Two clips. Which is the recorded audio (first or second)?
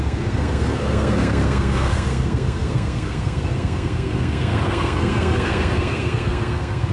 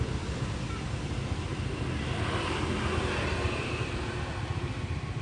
second